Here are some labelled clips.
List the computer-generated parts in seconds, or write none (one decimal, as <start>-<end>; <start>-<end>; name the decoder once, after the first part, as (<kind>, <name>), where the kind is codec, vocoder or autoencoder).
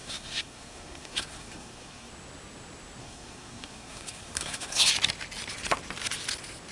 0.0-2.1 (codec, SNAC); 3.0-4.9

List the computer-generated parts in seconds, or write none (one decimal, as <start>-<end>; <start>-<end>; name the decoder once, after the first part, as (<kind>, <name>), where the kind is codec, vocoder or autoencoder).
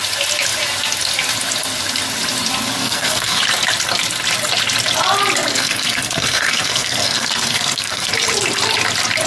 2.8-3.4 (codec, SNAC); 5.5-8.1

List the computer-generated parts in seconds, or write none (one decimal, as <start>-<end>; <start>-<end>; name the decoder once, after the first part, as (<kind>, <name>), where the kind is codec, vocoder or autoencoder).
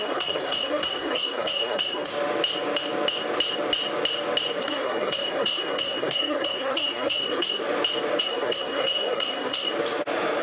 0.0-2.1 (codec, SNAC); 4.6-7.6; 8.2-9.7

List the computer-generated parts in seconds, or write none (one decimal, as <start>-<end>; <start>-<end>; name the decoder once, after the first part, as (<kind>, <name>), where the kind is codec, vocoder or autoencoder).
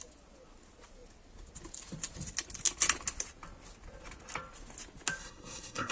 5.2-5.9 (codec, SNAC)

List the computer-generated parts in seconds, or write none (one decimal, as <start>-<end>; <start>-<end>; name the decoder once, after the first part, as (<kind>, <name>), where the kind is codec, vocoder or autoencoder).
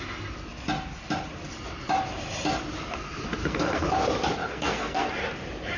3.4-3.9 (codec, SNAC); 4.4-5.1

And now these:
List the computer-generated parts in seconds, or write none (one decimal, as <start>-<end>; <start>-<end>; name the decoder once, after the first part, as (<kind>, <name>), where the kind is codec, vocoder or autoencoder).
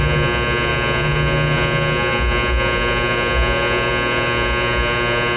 none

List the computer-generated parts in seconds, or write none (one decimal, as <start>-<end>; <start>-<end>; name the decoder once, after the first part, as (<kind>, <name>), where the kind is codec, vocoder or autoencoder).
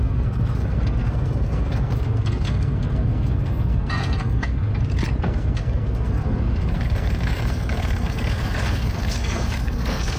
0.0-4.7 (codec, SNAC); 5.2-10.2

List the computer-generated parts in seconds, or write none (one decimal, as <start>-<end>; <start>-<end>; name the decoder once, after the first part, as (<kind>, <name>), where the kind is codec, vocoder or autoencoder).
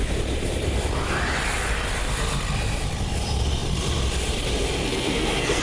4.8-5.6 (codec, SNAC)